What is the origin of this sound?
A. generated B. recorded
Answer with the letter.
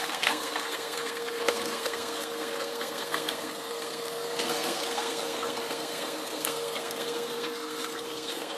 A